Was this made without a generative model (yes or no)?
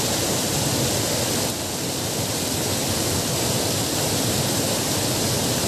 yes